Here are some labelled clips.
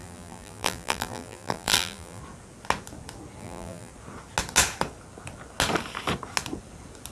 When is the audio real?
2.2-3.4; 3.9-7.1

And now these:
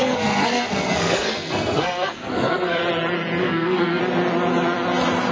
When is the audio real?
2.8-3.4; 4.0-5.3

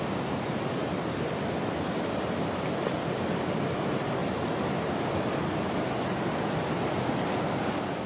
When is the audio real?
0.0-8.1

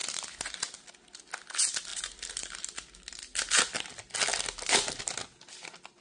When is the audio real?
0.0-6.0

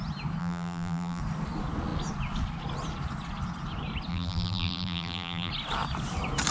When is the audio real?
0.0-0.4; 1.2-4.1; 5.5-6.5